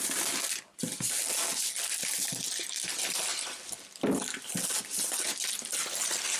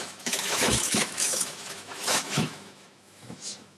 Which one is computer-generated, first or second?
second